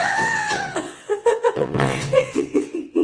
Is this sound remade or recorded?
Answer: remade